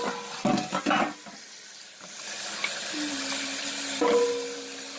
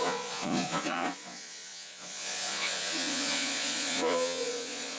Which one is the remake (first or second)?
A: second